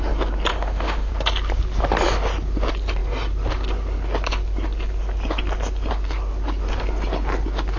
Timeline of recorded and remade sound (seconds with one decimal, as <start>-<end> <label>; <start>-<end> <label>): 0.0-0.5 recorded; 0.5-1.1 remade; 1.1-7.8 recorded